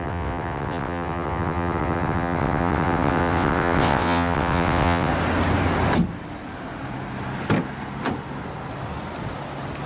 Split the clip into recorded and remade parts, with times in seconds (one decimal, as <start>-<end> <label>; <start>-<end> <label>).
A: 0.0-5.1 remade; 5.1-9.9 recorded